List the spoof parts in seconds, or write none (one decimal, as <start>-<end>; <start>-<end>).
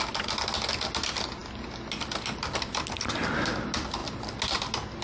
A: none